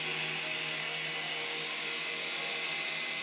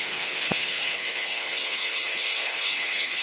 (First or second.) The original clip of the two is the first